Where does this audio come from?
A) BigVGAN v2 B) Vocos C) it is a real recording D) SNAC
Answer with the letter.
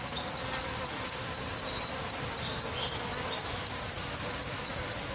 C